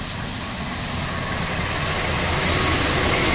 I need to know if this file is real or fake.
real